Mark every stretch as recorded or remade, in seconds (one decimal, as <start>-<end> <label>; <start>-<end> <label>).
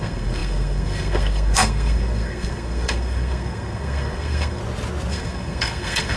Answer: 0.0-4.6 remade; 4.6-5.1 recorded; 5.1-6.2 remade